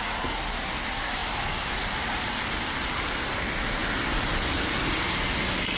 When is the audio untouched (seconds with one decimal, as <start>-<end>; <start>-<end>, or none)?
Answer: 0.0-5.8